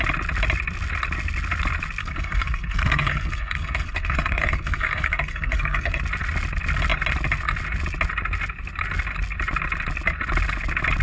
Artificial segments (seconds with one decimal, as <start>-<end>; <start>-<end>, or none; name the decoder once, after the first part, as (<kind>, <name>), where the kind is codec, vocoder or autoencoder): 2.0-6.0 (codec, SNAC)